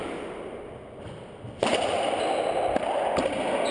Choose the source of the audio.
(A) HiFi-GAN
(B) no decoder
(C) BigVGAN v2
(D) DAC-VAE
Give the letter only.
B